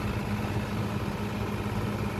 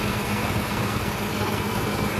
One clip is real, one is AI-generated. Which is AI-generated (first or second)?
second